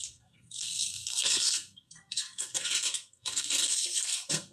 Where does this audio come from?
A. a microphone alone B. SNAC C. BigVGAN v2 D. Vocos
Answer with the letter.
B